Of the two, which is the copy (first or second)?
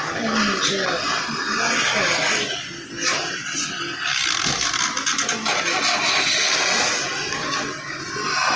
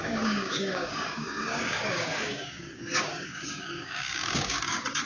second